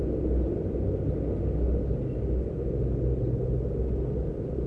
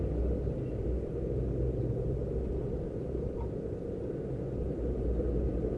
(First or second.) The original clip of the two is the first